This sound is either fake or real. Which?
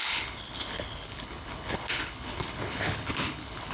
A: fake